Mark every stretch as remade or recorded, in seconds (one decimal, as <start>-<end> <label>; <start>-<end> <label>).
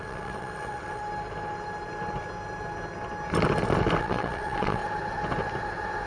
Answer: 0.0-1.0 remade; 1.0-4.0 recorded; 4.0-4.8 remade; 4.8-6.1 recorded